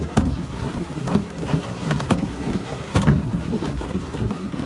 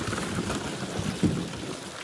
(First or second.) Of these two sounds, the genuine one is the second